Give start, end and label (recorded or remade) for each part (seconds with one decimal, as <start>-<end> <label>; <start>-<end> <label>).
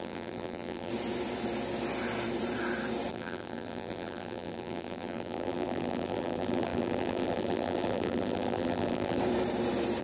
0.0-0.9 remade; 0.9-3.1 recorded; 3.1-9.2 remade; 9.2-10.0 recorded